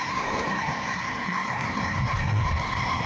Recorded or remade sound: remade